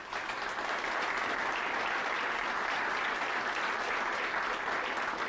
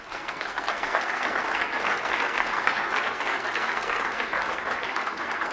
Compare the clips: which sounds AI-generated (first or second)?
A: second